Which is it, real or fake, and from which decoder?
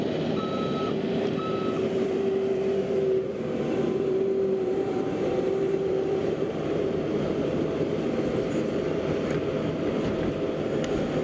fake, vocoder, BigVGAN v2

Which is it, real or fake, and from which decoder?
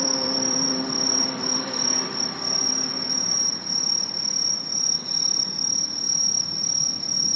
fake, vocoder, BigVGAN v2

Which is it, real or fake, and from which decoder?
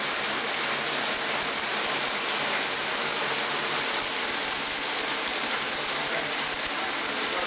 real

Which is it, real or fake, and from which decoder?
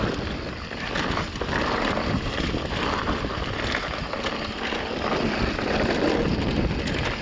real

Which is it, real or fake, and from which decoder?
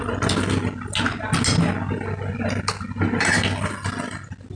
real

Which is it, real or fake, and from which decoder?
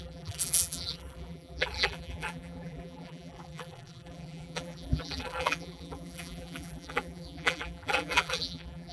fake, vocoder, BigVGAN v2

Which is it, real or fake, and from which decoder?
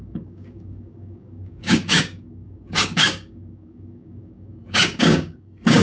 fake, codec, DAC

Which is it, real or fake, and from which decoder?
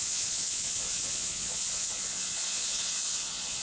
fake, vocoder, Vocos